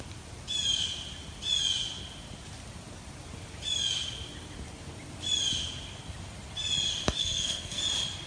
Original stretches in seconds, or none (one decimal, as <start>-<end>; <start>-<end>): 0.0-7.2; 7.8-8.3